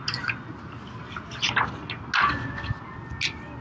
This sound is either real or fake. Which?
real